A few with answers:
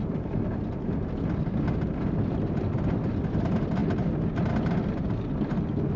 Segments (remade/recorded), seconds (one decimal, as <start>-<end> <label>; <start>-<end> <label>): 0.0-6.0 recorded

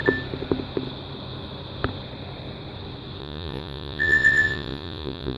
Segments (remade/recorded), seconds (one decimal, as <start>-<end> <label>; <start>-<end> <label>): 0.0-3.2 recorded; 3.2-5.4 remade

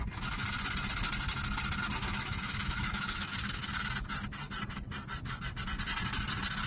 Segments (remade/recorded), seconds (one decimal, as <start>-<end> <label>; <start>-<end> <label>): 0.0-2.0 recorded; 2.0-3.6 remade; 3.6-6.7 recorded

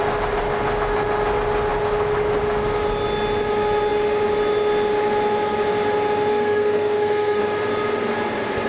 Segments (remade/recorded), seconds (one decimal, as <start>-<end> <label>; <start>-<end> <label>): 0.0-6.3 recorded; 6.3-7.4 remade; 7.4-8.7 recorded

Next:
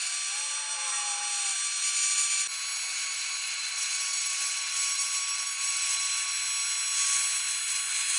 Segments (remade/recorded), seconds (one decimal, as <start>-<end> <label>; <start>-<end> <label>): 0.0-2.9 recorded; 2.9-6.3 remade; 6.3-8.2 recorded

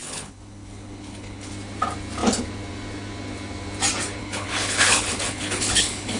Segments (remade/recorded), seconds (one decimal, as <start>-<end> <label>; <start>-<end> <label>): 0.0-1.5 remade; 1.5-4.2 recorded; 4.2-6.2 remade

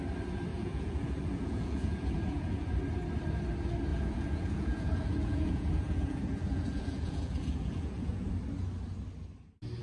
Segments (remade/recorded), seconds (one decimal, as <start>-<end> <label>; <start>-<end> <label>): 0.0-0.5 recorded; 0.5-2.7 remade; 2.7-3.9 recorded; 3.9-8.3 remade; 8.3-9.8 recorded

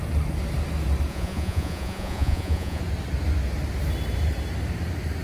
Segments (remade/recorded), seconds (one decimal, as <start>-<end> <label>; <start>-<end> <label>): 0.0-1.1 recorded; 1.1-2.8 remade; 2.8-5.2 recorded